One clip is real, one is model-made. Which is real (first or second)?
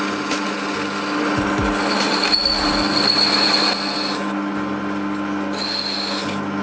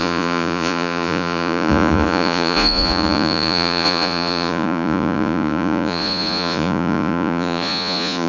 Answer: first